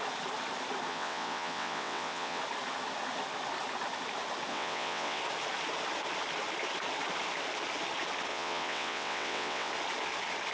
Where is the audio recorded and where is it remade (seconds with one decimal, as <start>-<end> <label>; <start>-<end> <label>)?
0.0-0.9 recorded; 0.9-2.4 remade; 2.4-4.5 recorded; 4.5-5.2 remade; 5.2-8.3 recorded; 8.3-9.7 remade; 9.7-10.5 recorded